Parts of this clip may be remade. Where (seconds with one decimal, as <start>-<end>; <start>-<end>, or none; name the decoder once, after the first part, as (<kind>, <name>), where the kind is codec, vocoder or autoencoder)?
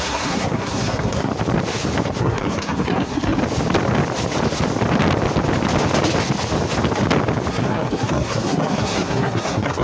0.0-1.3 (codec, SNAC); 2.2-3.4; 7.5-9.8